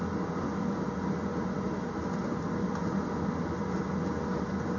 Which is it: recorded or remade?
recorded